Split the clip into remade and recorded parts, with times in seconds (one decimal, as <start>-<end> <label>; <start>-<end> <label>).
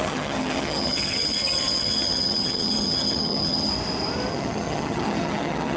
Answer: 0.0-3.7 remade; 3.7-4.3 recorded; 4.3-5.8 remade